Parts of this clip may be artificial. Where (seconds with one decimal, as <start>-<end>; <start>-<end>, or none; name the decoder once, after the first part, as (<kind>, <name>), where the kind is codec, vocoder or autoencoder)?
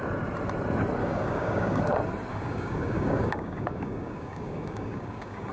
1.0-1.8 (codec, DAC); 2.3-5.5